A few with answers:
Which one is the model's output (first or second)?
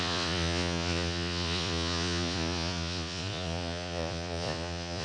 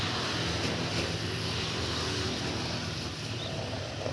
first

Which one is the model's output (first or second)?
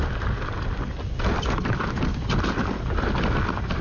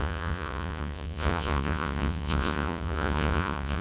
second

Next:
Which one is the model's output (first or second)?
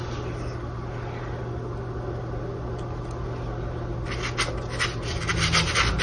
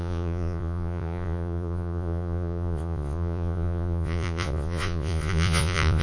second